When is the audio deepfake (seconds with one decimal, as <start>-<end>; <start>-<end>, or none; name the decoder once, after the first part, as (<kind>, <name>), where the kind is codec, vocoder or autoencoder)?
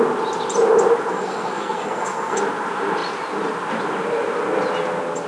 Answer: 1.1-2.4 (codec, SNAC)